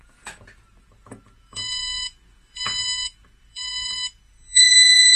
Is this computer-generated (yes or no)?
yes